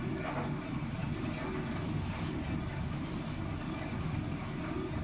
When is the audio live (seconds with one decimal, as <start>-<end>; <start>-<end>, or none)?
0.0-5.0